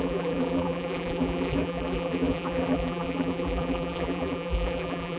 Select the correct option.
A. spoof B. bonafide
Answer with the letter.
A